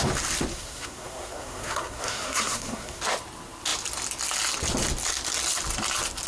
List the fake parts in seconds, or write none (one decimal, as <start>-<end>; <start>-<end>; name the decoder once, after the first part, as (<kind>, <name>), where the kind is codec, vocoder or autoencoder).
0.5-3.0 (codec, SNAC)